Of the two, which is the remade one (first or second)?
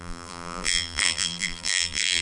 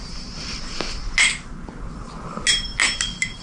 first